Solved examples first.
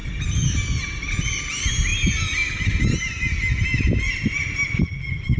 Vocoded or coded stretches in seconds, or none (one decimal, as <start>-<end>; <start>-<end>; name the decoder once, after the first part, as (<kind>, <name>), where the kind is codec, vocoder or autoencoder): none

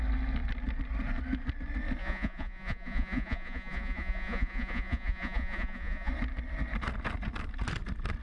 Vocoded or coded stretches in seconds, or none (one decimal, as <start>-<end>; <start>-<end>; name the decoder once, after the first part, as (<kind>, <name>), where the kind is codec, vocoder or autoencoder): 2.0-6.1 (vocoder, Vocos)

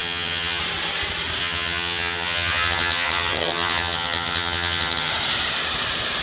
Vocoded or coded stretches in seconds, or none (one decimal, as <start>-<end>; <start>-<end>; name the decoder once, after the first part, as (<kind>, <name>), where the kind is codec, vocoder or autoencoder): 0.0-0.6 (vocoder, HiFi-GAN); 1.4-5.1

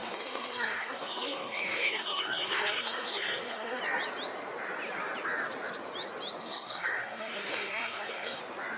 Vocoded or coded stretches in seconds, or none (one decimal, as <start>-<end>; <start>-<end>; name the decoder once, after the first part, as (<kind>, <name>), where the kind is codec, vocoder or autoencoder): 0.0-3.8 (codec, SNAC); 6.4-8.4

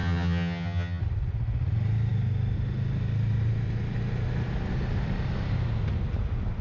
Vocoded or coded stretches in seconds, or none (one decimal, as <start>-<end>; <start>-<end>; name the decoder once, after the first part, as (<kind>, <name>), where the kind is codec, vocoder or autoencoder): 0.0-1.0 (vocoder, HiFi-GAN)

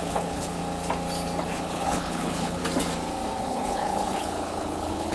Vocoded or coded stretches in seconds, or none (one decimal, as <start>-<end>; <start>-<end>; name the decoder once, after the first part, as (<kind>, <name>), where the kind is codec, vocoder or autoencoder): 0.0-0.6 (codec, HILCodec); 1.4-2.6; 3.4-5.1